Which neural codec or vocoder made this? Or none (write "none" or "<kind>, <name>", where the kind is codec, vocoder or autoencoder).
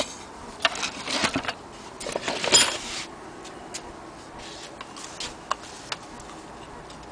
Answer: none